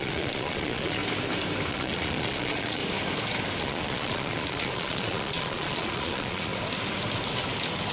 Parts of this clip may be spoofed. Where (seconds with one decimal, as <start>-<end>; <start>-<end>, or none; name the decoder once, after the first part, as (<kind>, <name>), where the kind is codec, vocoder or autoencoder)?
0.0-1.0 (vocoder, Vocos); 1.7-2.8; 3.6-6.5